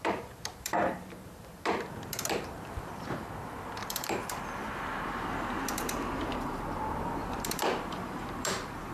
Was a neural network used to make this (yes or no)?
yes